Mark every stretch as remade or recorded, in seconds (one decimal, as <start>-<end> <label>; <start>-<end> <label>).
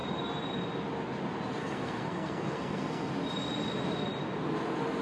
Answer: 0.0-1.6 recorded; 1.6-3.1 remade; 3.1-5.0 recorded